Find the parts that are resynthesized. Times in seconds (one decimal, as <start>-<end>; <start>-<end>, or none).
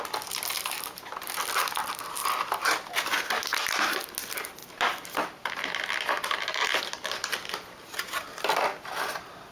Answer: none